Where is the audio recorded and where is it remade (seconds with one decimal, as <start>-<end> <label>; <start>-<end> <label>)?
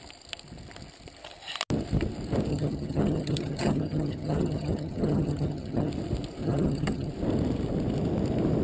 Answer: 0.0-2.5 recorded; 2.5-5.9 remade; 5.9-6.4 recorded; 6.4-7.1 remade; 7.1-8.6 recorded